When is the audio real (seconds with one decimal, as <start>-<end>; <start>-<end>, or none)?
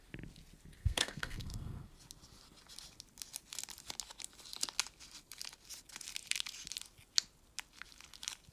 0.0-0.8; 1.9-8.5